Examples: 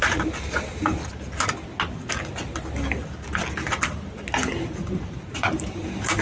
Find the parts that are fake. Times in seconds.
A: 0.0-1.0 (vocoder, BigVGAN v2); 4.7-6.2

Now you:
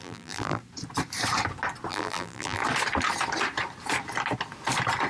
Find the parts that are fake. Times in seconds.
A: 0.0-0.6 (vocoder, BigVGAN v2); 1.9-2.6

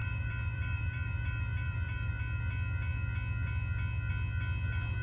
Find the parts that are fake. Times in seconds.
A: 0.0-2.2 (vocoder, BigVGAN v2)

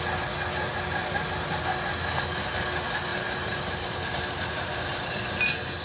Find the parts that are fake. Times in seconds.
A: 1.0-1.6 (vocoder, BigVGAN v2); 3.1-5.2

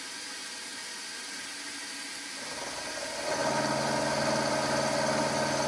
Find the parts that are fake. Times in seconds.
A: none